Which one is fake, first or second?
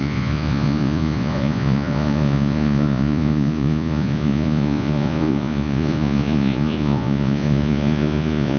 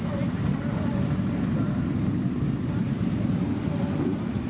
first